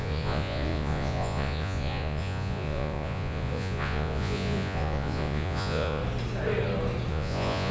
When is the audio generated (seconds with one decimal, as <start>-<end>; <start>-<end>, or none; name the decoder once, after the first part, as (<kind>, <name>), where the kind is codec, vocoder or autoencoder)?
0.0-6.0 (vocoder, Vocos); 7.1-7.7